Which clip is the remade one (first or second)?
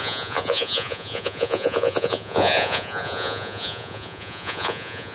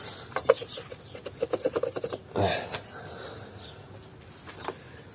first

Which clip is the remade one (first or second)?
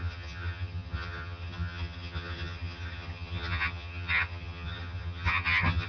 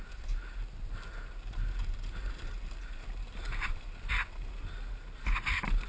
first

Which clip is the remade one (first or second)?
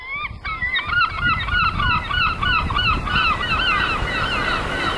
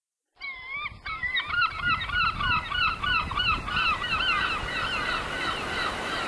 second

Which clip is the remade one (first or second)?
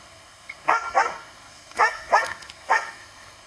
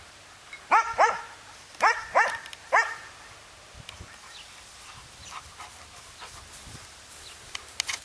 first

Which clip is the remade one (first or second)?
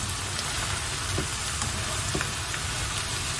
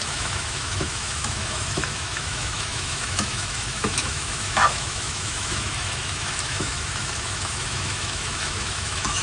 second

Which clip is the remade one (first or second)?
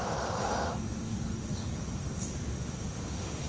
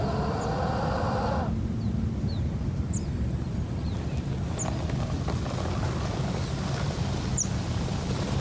first